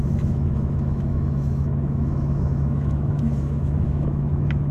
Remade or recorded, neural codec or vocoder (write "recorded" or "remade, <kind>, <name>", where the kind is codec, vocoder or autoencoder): remade, autoencoder, DAC-VAE